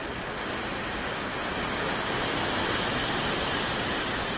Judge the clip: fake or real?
real